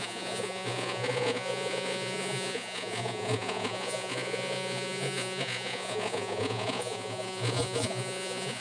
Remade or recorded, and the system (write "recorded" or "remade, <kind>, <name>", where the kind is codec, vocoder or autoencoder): remade, vocoder, Vocos